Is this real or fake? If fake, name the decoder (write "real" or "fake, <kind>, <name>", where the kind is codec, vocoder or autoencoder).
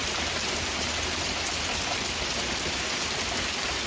real